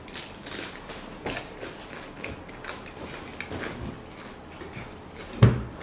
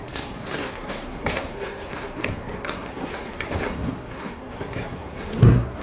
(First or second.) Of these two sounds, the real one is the first